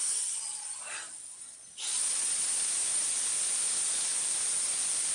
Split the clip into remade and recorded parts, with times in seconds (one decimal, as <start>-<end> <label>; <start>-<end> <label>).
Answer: 0.0-4.1 recorded; 4.1-5.1 remade